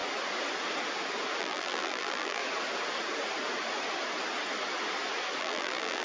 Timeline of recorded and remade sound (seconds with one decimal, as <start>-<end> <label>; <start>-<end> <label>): 0.0-1.4 recorded; 1.4-2.4 remade; 2.4-5.4 recorded; 5.4-6.0 remade